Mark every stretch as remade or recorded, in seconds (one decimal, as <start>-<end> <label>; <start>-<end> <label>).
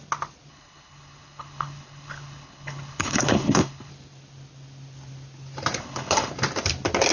0.0-0.5 recorded; 0.5-3.9 remade; 3.9-5.8 recorded; 5.8-6.3 remade; 6.3-7.1 recorded